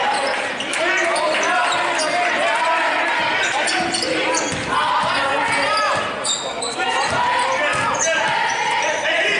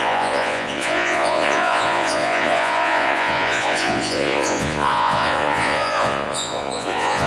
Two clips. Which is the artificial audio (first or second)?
second